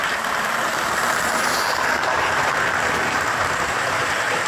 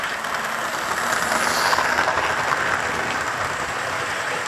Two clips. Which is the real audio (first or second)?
second